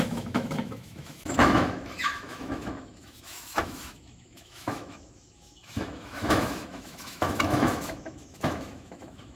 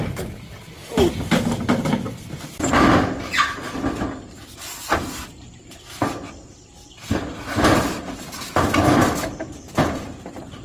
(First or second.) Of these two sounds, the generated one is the first